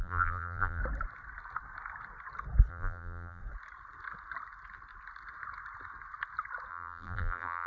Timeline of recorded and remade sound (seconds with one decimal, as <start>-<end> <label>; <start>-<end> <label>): 0.0-0.8 remade; 0.8-2.7 recorded; 2.7-3.4 remade; 3.4-6.7 recorded; 6.7-7.7 remade